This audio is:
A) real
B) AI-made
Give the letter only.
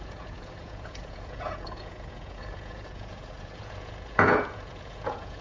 B